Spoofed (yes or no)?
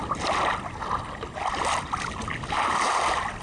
no